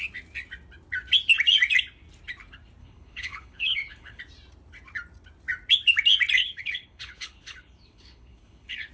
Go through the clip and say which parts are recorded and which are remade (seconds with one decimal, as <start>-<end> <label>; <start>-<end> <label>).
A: 0.0-2.8 recorded; 2.8-4.2 remade; 4.2-6.4 recorded; 6.4-8.9 remade